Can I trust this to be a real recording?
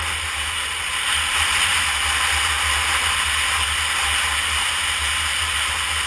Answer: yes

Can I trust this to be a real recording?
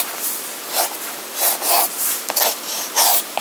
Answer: yes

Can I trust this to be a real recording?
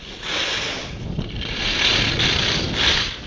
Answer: yes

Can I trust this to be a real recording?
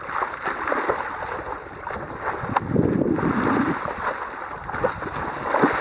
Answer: yes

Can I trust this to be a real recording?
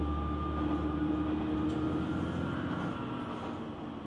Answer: yes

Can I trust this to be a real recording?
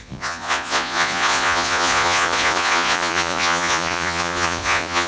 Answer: no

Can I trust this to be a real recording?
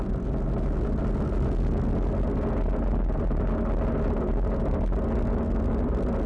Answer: yes